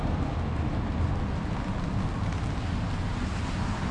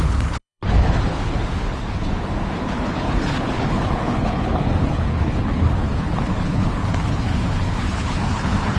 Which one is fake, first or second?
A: second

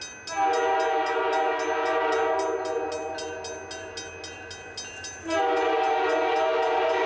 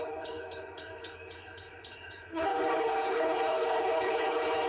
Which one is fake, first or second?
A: second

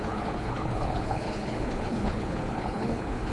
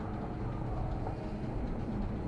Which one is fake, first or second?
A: first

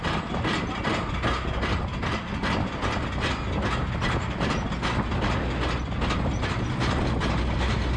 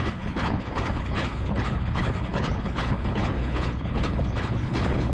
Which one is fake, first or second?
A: second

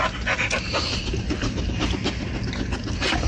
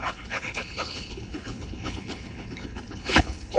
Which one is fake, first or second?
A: second